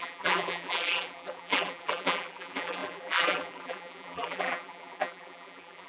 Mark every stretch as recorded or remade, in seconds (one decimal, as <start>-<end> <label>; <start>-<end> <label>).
0.0-5.9 remade

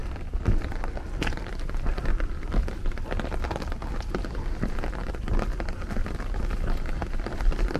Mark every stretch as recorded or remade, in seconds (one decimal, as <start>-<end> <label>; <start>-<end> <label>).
0.0-5.0 recorded; 5.0-7.8 remade

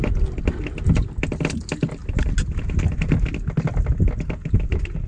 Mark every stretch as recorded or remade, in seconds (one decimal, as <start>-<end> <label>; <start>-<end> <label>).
0.0-5.1 recorded

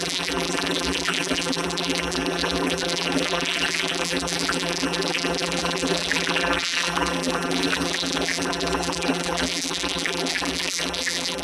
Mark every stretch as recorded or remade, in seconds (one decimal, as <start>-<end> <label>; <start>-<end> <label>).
0.0-11.4 remade

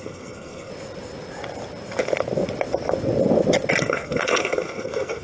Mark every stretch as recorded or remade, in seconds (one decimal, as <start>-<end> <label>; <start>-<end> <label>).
0.0-0.7 remade; 0.7-3.8 recorded; 3.8-5.2 remade

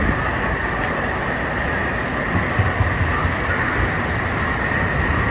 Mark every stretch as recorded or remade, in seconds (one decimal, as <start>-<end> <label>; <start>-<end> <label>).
0.0-5.3 recorded

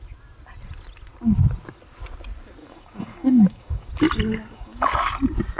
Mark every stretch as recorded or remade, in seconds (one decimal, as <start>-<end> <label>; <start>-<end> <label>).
0.0-2.6 recorded; 2.6-3.9 remade; 3.9-4.3 recorded; 4.3-5.1 remade; 5.1-5.6 recorded